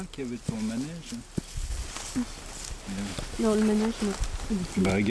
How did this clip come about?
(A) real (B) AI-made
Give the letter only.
A